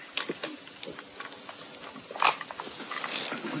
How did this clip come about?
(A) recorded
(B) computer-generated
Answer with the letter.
A